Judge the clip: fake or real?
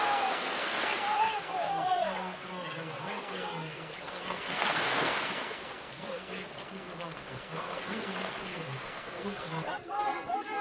fake